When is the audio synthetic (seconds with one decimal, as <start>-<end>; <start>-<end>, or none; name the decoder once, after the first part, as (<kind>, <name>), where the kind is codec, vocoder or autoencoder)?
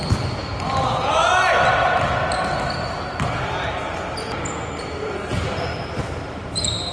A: none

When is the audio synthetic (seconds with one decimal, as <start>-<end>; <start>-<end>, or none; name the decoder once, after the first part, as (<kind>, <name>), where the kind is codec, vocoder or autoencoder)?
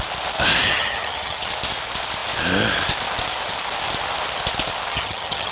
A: 0.7-1.5 (vocoder, HiFi-GAN); 4.9-5.5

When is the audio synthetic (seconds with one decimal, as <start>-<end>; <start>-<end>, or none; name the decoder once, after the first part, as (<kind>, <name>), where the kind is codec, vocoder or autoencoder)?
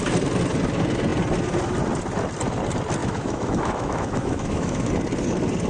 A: 3.0-4.9 (autoencoder, DAC-VAE)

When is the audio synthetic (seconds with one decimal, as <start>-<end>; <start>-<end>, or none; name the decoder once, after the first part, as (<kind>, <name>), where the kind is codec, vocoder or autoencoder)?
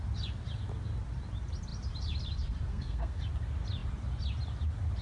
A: 2.7-3.2 (codec, SNAC)